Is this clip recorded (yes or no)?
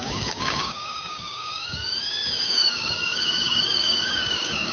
no